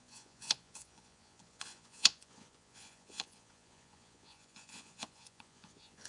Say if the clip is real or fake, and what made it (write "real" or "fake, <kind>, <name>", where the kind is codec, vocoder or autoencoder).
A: fake, vocoder, Vocos